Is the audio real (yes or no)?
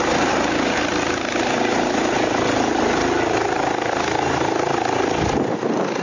yes